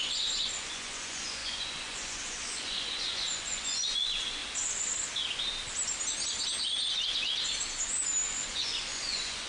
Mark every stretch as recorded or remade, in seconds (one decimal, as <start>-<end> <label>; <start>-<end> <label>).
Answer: 0.0-4.4 remade; 4.4-8.3 recorded; 8.3-9.5 remade